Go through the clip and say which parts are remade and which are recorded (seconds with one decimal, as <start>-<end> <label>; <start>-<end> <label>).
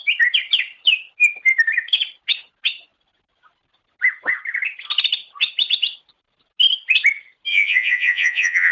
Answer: 0.0-7.5 recorded; 7.5-8.7 remade